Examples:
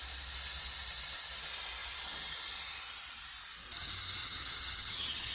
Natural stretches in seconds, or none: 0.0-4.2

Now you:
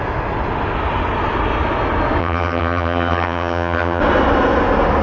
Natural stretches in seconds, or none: 0.0-2.2; 4.0-5.0

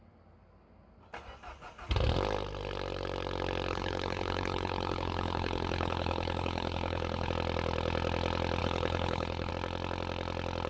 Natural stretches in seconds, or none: 0.0-3.7; 7.3-8.6; 9.5-10.7

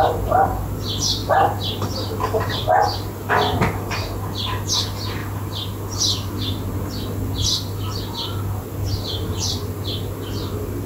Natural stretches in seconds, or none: 0.0-10.9

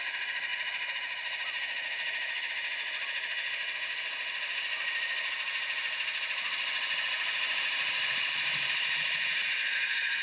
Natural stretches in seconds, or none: 0.0-10.2

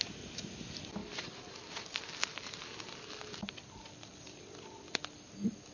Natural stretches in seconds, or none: 0.0-5.7

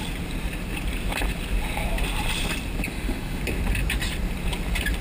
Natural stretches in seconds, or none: 0.0-2.9; 3.4-5.0